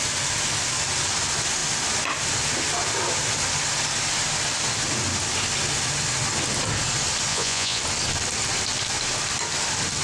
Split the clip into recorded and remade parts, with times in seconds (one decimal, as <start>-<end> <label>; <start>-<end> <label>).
0.0-7.3 recorded; 7.3-7.8 remade; 7.8-10.0 recorded